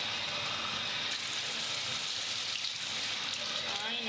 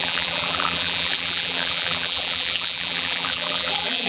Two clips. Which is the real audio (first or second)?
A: first